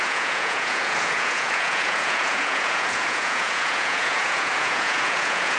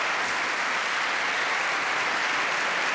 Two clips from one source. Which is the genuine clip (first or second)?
second